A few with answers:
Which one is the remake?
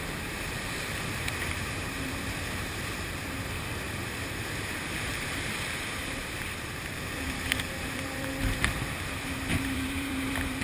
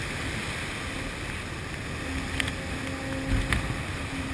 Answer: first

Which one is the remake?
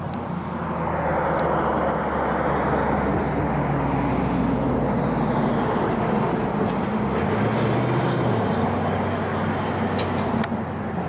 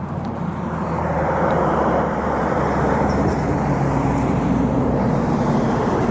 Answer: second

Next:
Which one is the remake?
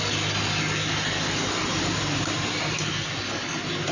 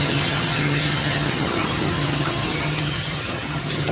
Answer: second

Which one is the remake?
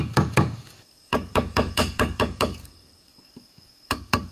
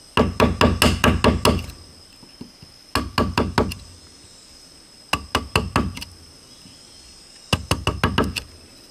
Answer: first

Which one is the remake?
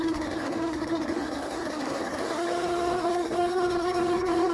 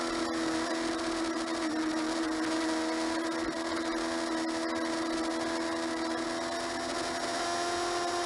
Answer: first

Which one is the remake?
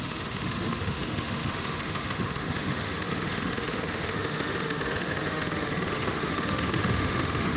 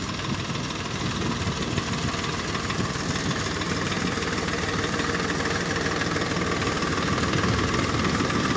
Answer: first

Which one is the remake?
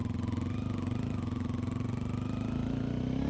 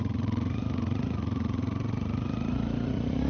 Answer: second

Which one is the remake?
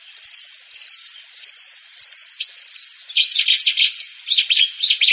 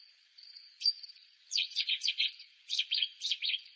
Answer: second